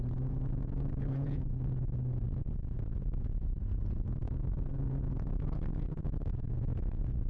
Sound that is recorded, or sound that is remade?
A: remade